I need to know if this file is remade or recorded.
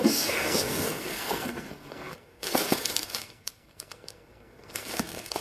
remade